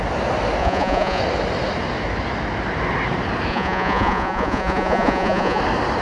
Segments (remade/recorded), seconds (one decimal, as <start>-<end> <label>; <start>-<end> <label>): 0.0-0.6 recorded; 0.6-1.2 remade; 1.2-3.5 recorded; 3.5-5.6 remade; 5.6-6.0 recorded